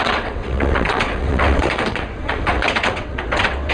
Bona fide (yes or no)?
no